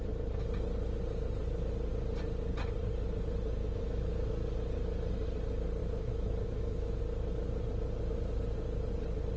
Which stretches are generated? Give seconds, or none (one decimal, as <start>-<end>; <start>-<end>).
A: 3.6-4.3; 5.8-7.0